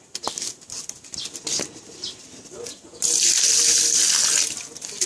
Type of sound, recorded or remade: recorded